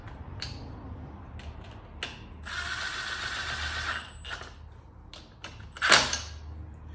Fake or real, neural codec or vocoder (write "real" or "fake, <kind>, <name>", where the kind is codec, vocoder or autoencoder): real